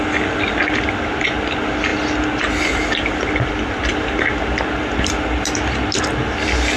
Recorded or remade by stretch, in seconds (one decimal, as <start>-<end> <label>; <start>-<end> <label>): 0.0-6.8 recorded